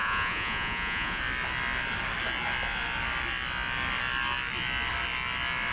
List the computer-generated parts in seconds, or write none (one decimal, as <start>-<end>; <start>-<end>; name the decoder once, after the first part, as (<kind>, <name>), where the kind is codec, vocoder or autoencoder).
0.0-1.2 (vocoder, Vocos)